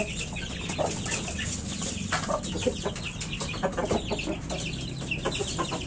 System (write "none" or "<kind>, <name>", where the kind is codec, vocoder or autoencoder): none